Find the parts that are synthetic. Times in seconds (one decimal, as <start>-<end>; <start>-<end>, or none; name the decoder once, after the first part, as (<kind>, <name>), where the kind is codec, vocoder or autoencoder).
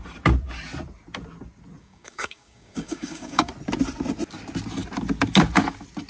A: 1.8-3.5 (codec, DAC)